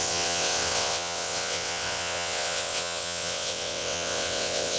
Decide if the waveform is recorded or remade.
remade